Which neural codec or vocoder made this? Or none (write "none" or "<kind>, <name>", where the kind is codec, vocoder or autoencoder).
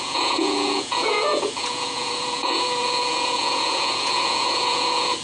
vocoder, Vocos